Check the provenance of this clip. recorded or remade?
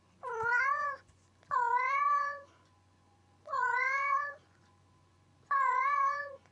remade